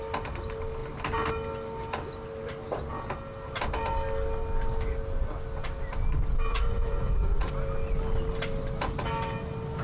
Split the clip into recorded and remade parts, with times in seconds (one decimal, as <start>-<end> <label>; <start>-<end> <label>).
0.0-6.5 recorded; 6.5-7.5 remade; 7.5-9.8 recorded